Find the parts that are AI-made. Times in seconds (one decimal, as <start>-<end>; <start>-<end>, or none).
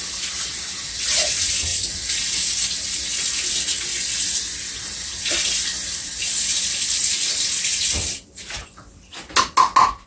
none